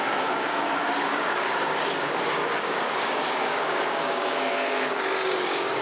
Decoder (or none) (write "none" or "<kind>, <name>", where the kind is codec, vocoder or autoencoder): codec, DAC